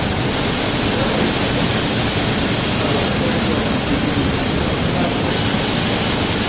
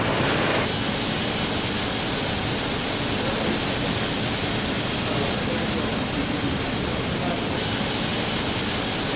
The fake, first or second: first